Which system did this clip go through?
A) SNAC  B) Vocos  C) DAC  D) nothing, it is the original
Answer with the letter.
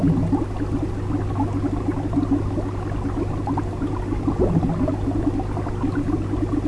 D